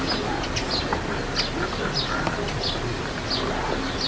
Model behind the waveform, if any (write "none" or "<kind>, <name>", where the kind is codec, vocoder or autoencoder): none